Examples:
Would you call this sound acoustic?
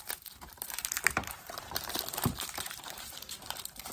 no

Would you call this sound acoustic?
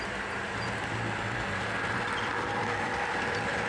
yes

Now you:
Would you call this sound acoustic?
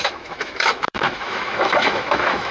no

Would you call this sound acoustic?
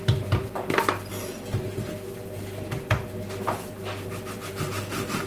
yes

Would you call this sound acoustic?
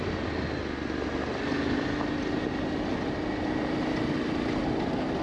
yes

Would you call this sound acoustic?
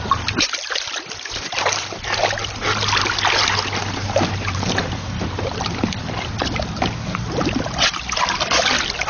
yes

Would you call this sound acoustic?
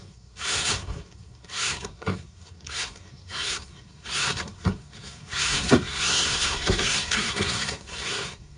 no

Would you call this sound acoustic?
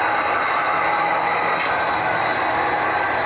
yes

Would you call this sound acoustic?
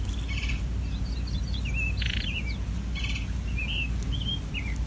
yes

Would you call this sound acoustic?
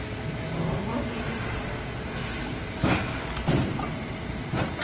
yes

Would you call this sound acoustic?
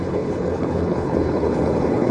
no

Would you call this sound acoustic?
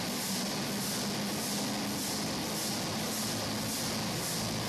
yes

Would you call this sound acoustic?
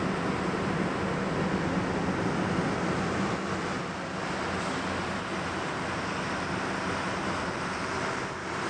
yes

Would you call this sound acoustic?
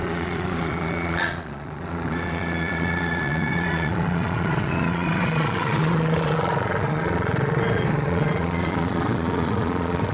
no